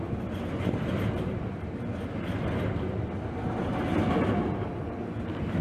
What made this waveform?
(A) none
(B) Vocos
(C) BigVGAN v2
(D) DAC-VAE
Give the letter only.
A